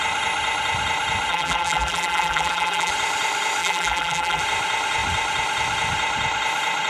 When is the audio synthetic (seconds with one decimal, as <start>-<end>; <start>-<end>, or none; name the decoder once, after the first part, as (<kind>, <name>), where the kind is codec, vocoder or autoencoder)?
1.3-2.9 (vocoder, BigVGAN v2); 3.6-4.4